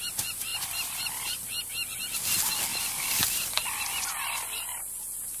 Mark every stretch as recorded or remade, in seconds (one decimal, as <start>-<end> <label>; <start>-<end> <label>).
0.0-0.5 recorded; 0.5-1.7 remade; 1.7-2.7 recorded; 2.7-4.2 remade; 4.2-5.4 recorded